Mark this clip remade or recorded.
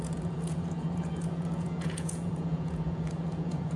remade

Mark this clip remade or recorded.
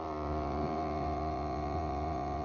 remade